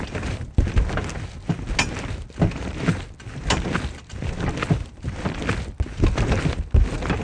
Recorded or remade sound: recorded